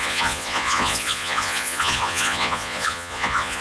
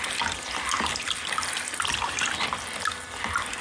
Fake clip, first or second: first